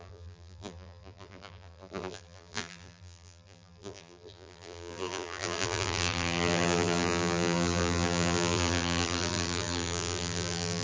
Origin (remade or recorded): remade